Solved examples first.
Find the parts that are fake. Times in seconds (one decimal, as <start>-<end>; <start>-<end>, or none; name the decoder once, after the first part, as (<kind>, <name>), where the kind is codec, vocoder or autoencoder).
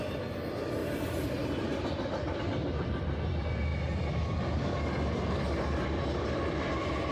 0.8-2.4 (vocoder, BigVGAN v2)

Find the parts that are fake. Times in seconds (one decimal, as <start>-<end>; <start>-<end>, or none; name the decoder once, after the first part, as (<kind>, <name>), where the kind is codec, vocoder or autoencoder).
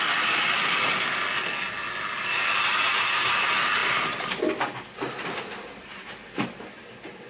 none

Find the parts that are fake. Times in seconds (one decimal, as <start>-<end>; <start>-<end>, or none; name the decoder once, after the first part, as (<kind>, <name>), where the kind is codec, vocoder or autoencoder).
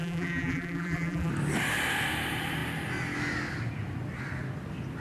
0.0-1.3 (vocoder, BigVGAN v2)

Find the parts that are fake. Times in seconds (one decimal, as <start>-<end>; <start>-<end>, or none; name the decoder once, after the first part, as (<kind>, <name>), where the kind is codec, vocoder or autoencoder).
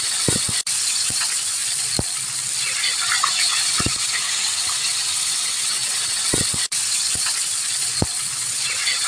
0.0-1.6 (vocoder, WaveNeXt); 3.2-9.1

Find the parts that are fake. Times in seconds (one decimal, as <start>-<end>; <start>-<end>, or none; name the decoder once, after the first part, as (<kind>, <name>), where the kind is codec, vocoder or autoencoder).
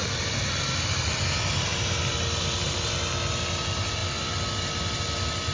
none